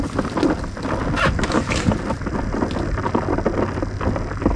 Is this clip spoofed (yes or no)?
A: no